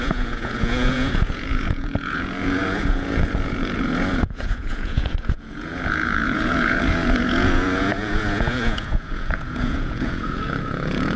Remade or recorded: remade